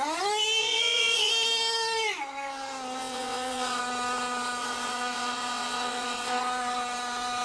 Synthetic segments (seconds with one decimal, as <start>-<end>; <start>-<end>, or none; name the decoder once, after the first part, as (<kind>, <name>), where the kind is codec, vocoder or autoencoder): 0.6-1.3 (vocoder, WaveNeXt); 3.0-3.8; 4.6-6.4